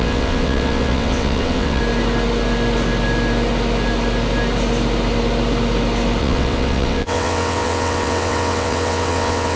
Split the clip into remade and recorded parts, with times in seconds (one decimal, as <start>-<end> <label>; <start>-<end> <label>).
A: 0.0-1.8 remade; 1.8-6.2 recorded; 6.2-9.6 remade